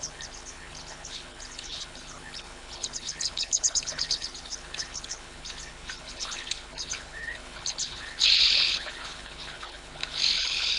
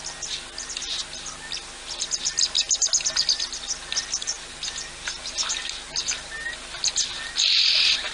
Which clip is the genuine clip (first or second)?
second